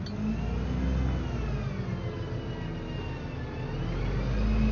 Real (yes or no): yes